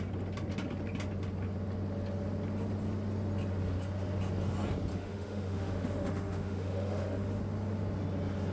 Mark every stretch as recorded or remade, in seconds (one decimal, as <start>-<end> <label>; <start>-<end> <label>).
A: 0.0-4.9 recorded; 4.9-7.4 remade; 7.4-8.5 recorded